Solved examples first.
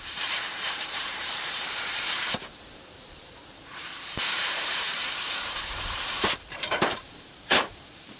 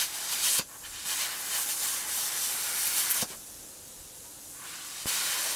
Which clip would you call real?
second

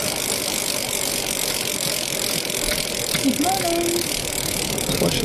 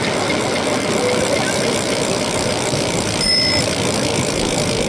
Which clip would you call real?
first